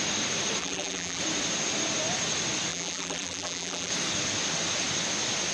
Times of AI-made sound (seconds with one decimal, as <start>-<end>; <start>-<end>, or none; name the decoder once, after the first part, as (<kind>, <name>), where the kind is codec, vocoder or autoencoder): 0.6-1.2 (vocoder, BigVGAN v2); 2.7-3.9